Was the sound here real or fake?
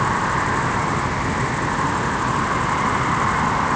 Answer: real